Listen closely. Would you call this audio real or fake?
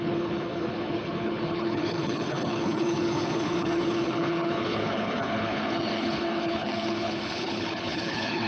fake